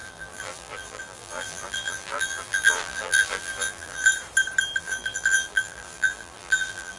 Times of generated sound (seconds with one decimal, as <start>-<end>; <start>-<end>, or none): 0.0-4.1; 4.8-7.0